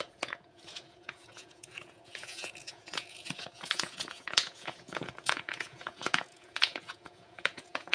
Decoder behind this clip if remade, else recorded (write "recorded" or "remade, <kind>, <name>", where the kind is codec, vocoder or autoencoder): remade, vocoder, Vocos